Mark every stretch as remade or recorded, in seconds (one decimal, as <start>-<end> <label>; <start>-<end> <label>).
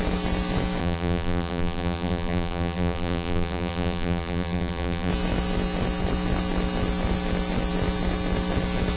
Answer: 0.0-0.8 recorded; 0.8-5.1 remade; 5.1-9.0 recorded